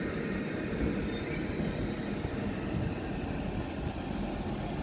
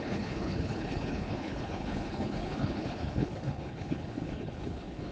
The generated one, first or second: second